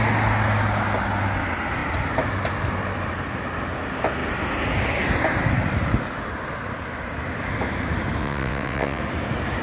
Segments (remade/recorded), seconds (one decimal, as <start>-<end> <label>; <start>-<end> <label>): 0.0-8.2 recorded; 8.2-9.0 remade; 9.0-9.6 recorded